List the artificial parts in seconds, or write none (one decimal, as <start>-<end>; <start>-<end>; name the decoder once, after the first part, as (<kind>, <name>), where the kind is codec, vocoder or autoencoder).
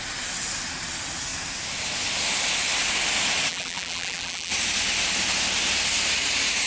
3.5-4.5 (vocoder, BigVGAN v2)